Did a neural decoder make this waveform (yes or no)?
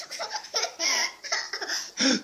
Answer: no